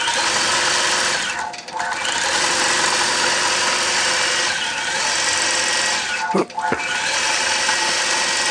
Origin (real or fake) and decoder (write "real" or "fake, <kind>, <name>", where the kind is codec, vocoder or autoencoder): real